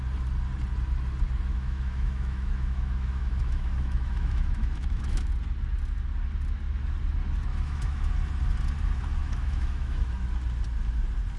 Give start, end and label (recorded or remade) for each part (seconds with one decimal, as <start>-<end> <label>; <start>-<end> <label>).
0.0-1.5 recorded; 1.5-5.3 remade; 5.3-7.5 recorded; 7.5-8.1 remade; 8.1-9.2 recorded; 9.2-10.1 remade; 10.1-11.4 recorded